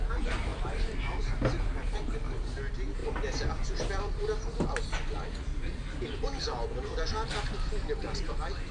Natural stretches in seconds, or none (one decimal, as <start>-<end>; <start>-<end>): 0.0-8.7